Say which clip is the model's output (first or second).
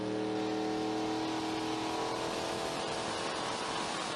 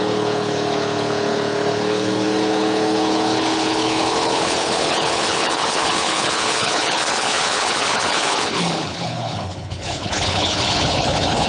second